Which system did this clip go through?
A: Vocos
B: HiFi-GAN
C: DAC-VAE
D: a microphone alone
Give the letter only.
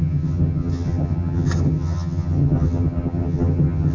B